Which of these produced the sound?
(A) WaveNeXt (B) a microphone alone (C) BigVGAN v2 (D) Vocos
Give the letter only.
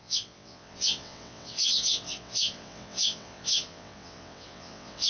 A